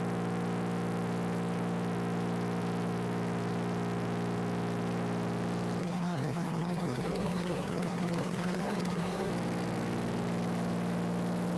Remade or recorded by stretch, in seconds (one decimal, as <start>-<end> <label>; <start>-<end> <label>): 0.0-5.8 recorded; 5.8-9.3 remade; 9.3-11.6 recorded

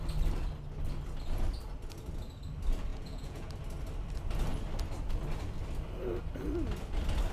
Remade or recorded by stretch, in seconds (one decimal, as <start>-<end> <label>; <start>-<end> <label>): 0.0-2.9 recorded; 2.9-3.5 remade; 3.5-7.3 recorded

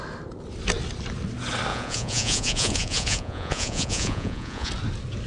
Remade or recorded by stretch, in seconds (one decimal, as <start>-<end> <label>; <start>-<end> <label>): 0.0-1.7 recorded; 1.7-4.7 remade; 4.7-5.3 recorded

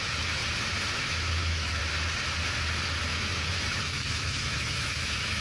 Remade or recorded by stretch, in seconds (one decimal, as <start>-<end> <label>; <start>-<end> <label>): 0.0-0.4 remade; 0.4-1.0 recorded; 1.0-1.8 remade; 1.8-3.0 recorded; 3.0-5.4 remade

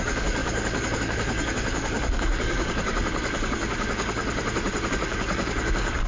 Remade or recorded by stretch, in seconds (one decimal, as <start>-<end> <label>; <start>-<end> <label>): 0.0-4.2 remade; 4.2-4.9 recorded; 4.9-6.1 remade

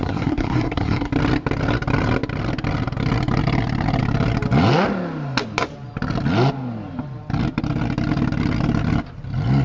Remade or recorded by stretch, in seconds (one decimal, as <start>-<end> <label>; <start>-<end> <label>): 0.0-1.1 remade; 1.1-9.6 recorded

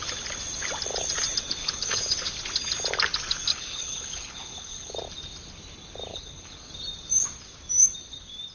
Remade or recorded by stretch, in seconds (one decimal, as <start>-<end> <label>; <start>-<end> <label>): 0.0-1.6 recorded; 1.6-2.4 remade; 2.4-3.5 recorded; 3.5-4.9 remade; 4.9-6.1 recorded; 6.1-6.7 remade; 6.7-8.5 recorded

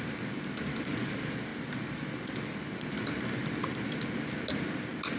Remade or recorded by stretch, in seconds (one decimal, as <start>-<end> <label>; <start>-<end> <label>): 0.0-5.2 recorded